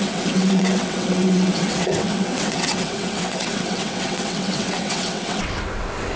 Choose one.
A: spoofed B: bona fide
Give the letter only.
A